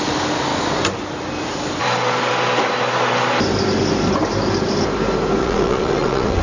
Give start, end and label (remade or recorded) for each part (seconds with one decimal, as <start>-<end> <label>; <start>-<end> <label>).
0.0-5.4 recorded; 5.4-6.4 remade

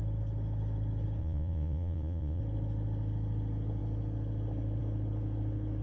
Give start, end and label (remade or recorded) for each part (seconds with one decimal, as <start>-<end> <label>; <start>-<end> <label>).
0.0-1.2 recorded; 1.2-2.4 remade; 2.4-5.8 recorded

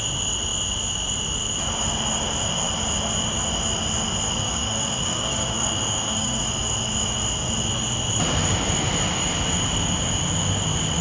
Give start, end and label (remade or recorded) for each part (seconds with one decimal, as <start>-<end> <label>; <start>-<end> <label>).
0.0-4.4 recorded; 4.4-6.4 remade; 6.4-11.0 recorded

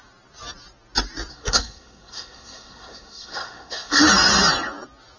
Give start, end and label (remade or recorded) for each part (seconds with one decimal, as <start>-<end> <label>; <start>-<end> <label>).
0.0-1.3 recorded; 1.3-4.0 remade; 4.0-5.2 recorded

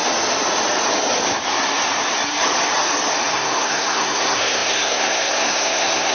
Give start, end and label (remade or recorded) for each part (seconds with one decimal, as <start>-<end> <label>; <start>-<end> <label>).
0.0-3.3 recorded; 3.3-6.1 remade

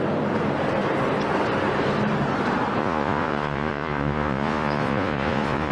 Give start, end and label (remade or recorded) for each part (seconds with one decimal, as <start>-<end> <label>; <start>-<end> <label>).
0.0-2.8 recorded; 2.8-5.7 remade